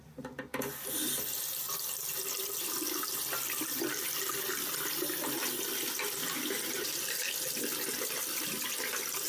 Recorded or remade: recorded